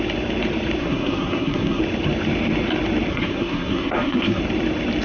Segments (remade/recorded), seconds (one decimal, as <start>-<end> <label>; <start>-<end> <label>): 0.0-0.8 recorded; 0.8-1.8 remade; 1.8-3.1 recorded; 3.1-4.4 remade; 4.4-5.0 recorded